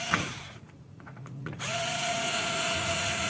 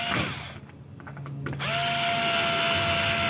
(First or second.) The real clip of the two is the second